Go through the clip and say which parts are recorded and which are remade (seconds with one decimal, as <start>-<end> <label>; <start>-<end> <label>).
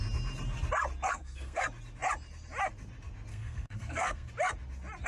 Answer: 0.0-1.1 recorded; 1.1-1.6 remade; 1.6-3.3 recorded; 3.3-4.3 remade; 4.3-5.1 recorded